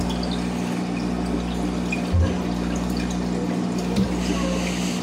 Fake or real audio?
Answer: real